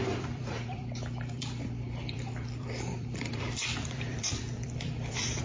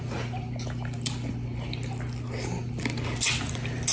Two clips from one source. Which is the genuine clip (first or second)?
second